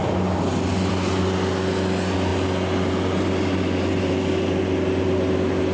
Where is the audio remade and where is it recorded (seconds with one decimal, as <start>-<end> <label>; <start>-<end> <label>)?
0.0-5.7 recorded